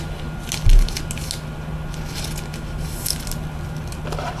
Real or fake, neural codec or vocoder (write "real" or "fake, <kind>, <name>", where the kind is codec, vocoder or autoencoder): real